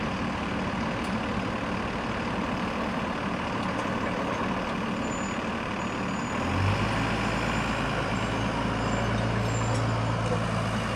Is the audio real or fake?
real